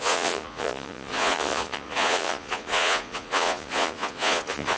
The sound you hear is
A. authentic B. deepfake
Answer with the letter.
B